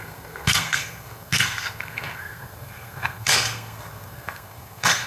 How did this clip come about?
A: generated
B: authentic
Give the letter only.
A